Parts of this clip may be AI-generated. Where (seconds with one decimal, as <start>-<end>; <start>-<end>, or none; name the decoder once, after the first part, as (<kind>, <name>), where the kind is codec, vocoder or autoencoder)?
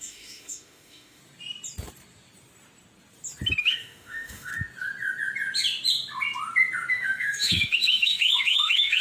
0.0-1.2 (autoencoder, DAC-VAE); 3.6-4.5; 6.9-9.0